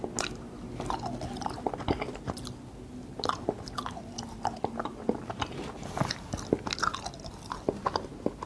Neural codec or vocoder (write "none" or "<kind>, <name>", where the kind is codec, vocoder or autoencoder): none